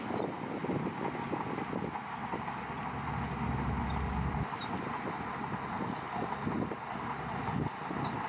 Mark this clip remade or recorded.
recorded